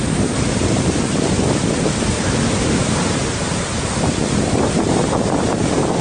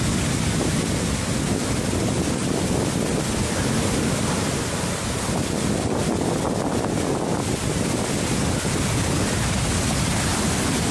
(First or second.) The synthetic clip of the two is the first